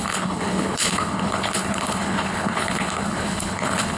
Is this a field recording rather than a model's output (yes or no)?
no